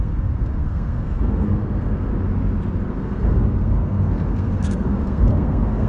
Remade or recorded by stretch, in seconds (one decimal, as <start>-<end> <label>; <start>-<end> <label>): 0.0-2.1 remade; 2.1-2.9 recorded; 2.9-5.9 remade

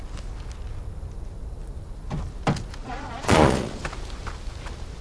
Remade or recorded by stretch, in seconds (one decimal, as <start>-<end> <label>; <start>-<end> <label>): 0.0-2.8 recorded; 2.8-3.8 remade; 3.8-5.0 recorded

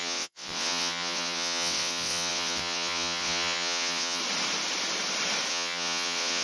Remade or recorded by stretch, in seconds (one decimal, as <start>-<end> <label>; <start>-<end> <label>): 0.0-4.2 remade; 4.2-5.5 recorded; 5.5-6.4 remade